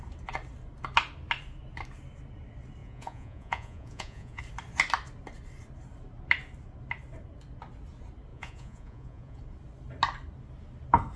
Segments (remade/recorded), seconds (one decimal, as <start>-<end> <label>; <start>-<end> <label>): 0.0-2.8 recorded; 2.8-4.4 remade; 4.4-8.3 recorded; 8.3-9.4 remade; 9.4-11.2 recorded

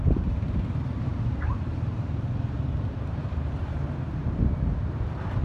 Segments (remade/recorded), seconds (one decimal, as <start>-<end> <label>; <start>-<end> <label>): 0.0-4.2 remade; 4.2-4.9 recorded; 4.9-5.4 remade